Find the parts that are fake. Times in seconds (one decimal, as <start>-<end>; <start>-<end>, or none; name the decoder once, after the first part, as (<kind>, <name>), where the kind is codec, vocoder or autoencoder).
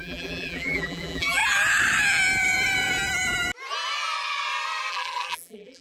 0.0-1.4 (vocoder, BigVGAN v2); 4.9-5.8